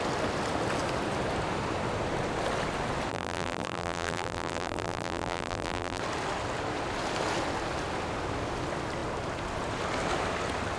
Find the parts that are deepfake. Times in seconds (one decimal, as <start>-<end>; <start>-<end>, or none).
3.1-6.0